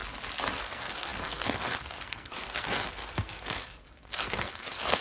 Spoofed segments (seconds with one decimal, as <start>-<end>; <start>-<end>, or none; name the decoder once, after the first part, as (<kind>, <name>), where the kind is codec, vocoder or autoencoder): 0.6-5.0 (codec, SNAC)

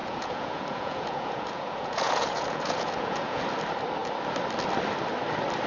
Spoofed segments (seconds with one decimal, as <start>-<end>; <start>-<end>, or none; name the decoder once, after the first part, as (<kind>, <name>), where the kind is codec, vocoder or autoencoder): 0.0-3.4 (vocoder, Vocos)

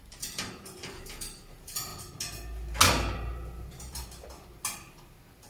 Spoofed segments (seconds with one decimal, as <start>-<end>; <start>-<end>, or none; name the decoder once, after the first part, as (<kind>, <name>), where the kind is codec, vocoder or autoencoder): 0.0-1.9 (vocoder, BigVGAN v2)

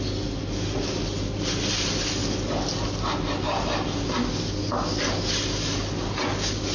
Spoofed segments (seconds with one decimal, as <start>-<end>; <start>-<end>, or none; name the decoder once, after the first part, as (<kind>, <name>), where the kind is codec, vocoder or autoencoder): none

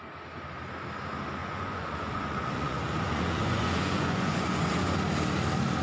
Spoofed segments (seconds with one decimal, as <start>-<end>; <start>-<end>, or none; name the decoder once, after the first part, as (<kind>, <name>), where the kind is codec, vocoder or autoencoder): 1.4-4.7 (vocoder, Vocos)